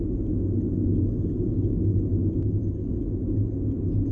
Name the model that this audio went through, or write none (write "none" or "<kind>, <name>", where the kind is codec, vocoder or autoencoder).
none